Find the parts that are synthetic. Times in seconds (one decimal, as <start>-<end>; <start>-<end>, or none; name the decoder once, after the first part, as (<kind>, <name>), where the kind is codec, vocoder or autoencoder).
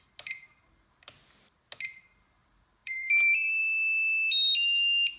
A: 2.8-3.6 (vocoder, BigVGAN v2)